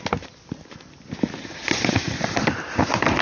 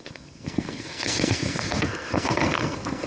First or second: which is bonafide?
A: first